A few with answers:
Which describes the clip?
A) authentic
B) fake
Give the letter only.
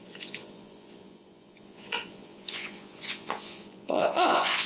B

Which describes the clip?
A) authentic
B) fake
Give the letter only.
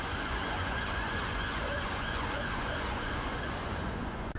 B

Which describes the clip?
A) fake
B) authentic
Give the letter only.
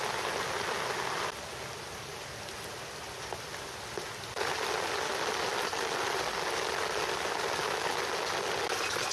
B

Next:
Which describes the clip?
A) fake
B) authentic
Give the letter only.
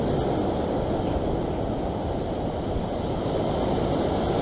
B